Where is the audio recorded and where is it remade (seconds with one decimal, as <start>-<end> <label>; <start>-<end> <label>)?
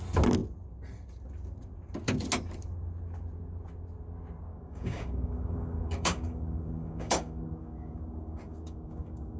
0.0-4.5 recorded; 4.5-9.4 remade